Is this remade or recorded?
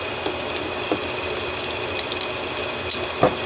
recorded